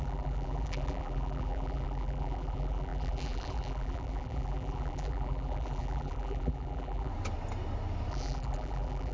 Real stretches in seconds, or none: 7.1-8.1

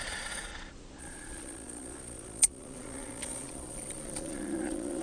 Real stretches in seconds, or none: 0.5-1.0

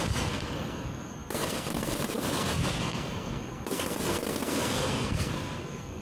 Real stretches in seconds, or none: none

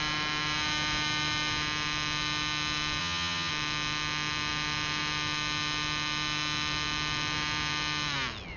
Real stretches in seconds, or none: 0.0-3.0; 3.5-8.6

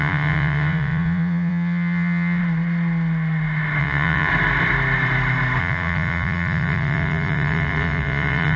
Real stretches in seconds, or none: 2.4-3.8; 4.3-5.6

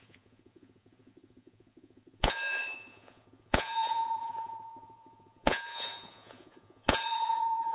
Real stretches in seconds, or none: none